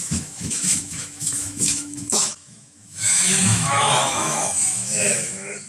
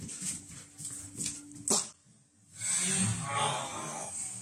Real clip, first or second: second